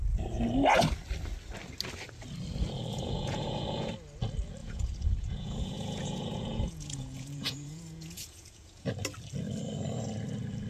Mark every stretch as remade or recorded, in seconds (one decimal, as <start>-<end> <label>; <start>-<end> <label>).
0.0-2.9 recorded; 2.9-3.9 remade; 3.9-4.6 recorded; 4.6-8.9 remade; 8.9-10.7 recorded